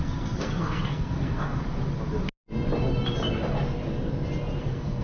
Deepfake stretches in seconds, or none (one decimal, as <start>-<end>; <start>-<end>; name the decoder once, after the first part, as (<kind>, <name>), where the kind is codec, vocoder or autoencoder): 0.0-1.6 (codec, SNAC); 4.6-5.0